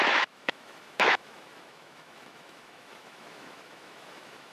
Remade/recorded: remade